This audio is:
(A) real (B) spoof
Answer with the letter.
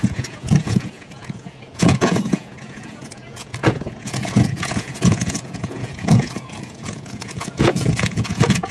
B